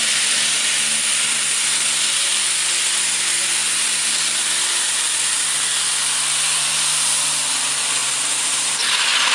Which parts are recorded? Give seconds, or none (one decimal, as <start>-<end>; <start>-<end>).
0.0-8.0; 8.9-9.3